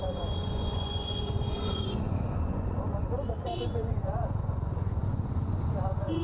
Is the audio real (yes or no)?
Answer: no